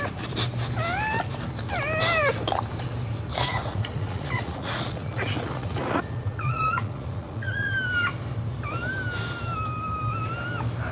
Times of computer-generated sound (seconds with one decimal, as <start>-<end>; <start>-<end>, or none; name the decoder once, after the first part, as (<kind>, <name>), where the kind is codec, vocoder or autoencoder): 3.5-7.7 (vocoder, Vocos)